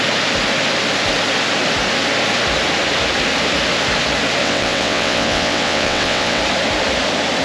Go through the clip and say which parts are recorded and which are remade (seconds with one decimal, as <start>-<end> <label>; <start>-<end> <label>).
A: 0.0-4.4 recorded; 4.4-6.4 remade; 6.4-7.4 recorded